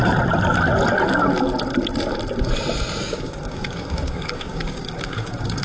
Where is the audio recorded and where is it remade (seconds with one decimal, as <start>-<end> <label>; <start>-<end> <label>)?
0.0-3.0 recorded; 3.0-5.6 remade